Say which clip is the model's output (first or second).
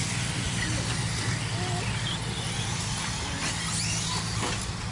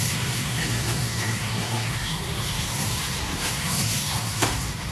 second